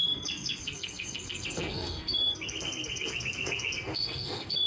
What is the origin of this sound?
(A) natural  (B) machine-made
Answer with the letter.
B